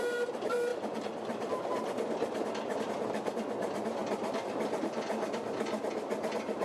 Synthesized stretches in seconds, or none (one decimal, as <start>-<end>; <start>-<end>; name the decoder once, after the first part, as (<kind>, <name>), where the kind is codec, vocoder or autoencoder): none